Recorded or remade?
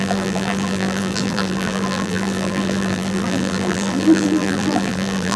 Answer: remade